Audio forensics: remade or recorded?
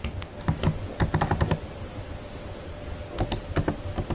recorded